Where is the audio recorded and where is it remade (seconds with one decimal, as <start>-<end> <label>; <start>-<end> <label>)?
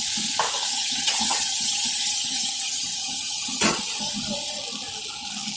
0.0-0.7 recorded; 0.7-4.1 remade; 4.1-5.6 recorded